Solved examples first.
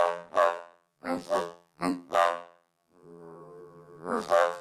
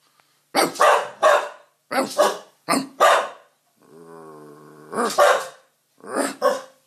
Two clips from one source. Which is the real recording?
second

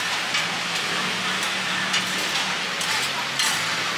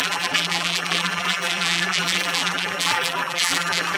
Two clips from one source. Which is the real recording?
first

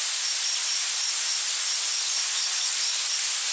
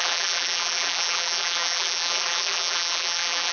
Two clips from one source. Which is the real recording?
first